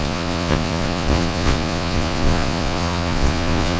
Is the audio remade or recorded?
remade